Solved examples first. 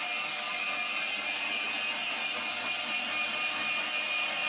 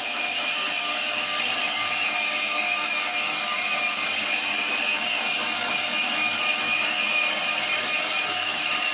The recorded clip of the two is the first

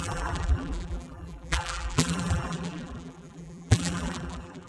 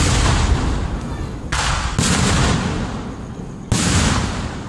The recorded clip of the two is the second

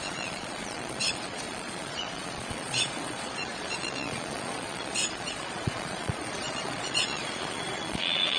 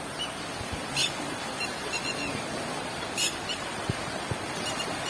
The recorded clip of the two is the second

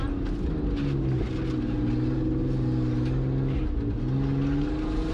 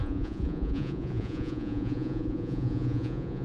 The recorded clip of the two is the first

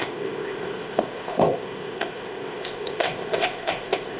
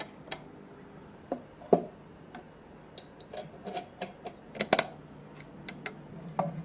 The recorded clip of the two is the second